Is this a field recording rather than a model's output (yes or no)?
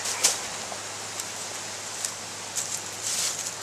yes